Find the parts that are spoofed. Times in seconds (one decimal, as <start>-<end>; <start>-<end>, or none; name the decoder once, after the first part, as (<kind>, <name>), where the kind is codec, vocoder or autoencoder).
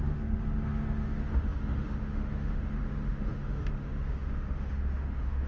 0.0-5.5 (autoencoder, DAC-VAE)